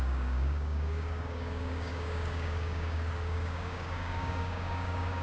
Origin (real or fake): fake